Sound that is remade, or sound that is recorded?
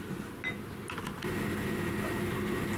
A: recorded